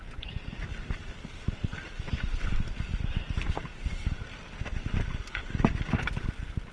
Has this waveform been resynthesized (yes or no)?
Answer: no